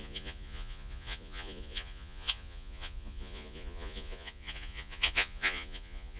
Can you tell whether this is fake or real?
fake